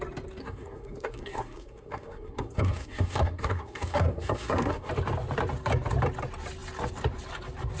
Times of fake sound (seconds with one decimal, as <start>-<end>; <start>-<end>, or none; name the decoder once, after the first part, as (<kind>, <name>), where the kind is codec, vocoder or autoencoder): 0.4-4.9 (codec, SNAC)